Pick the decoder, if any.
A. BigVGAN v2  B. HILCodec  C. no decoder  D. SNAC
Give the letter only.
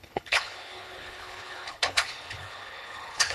B